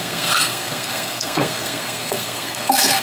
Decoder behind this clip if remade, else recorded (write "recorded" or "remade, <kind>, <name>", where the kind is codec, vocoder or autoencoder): remade, codec, SNAC